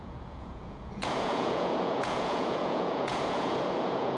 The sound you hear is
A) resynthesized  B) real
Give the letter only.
A